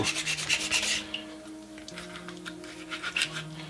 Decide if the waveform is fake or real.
real